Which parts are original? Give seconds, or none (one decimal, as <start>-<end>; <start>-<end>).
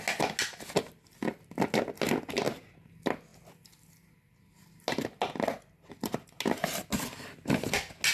0.0-8.1